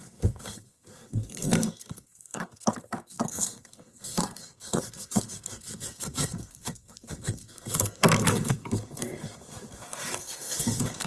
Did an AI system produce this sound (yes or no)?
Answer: yes